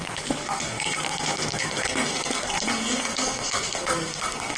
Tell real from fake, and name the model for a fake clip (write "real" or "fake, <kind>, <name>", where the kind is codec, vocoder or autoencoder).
fake, codec, SNAC